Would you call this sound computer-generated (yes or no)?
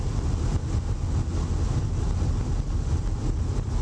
no